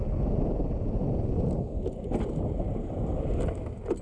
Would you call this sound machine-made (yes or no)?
no